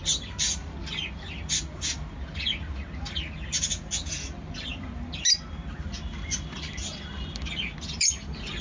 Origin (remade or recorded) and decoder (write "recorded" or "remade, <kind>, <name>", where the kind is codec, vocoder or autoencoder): recorded